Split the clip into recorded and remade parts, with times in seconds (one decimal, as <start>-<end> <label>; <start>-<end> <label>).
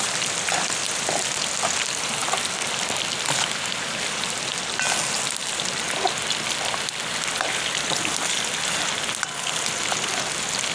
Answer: 0.0-10.7 recorded